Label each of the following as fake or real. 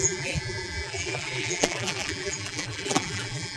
fake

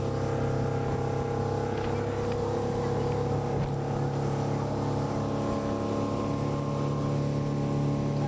real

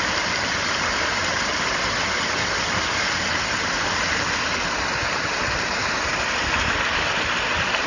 real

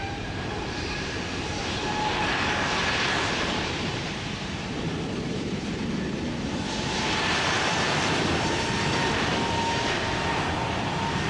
fake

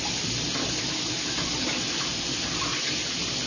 real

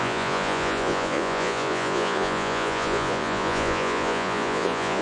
fake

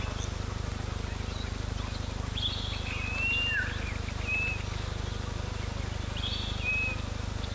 real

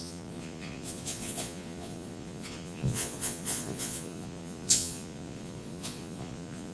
fake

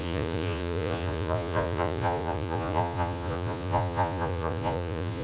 fake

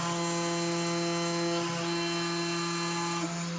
real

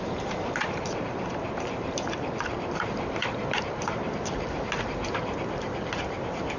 real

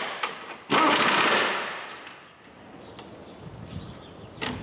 real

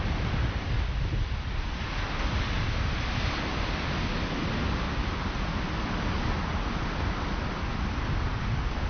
real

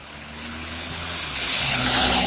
fake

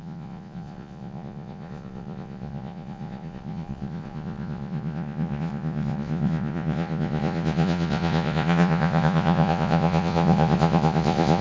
fake